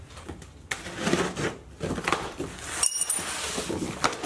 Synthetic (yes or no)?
no